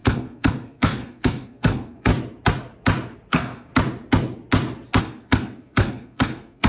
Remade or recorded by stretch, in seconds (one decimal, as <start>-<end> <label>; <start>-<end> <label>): 0.0-2.1 remade; 2.1-3.3 recorded; 3.3-3.7 remade; 3.7-5.0 recorded; 5.0-6.7 remade

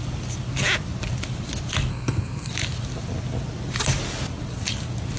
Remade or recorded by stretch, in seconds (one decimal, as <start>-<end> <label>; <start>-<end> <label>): 0.0-1.9 recorded; 1.9-2.5 remade; 2.5-5.2 recorded